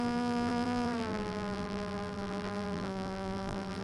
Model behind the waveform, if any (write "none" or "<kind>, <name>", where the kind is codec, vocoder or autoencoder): vocoder, BigVGAN v2